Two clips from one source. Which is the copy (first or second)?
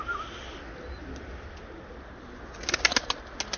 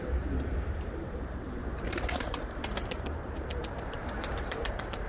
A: second